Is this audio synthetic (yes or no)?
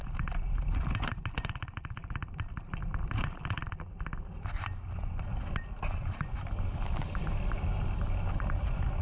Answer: no